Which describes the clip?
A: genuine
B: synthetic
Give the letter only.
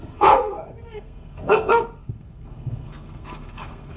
B